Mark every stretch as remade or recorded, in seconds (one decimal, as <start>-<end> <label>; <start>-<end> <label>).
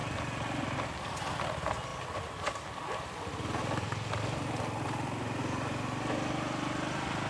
0.0-7.3 recorded